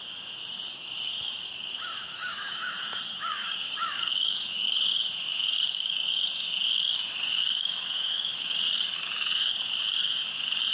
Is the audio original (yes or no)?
no